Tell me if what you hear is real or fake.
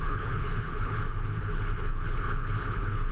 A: fake